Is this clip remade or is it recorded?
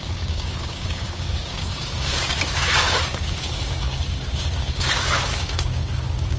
remade